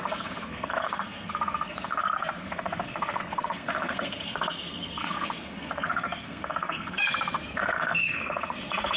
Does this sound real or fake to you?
fake